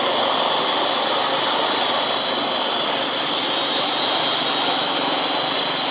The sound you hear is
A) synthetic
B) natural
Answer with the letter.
B